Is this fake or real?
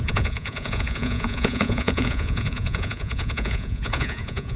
fake